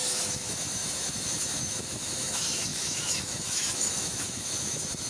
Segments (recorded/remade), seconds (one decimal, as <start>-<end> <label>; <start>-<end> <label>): 0.0-5.1 remade